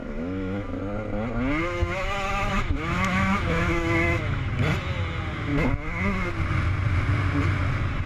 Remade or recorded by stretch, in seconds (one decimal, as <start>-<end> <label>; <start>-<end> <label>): 0.0-0.8 remade; 0.8-1.6 recorded; 1.6-4.5 remade; 4.5-5.5 recorded; 5.5-6.3 remade; 6.3-8.1 recorded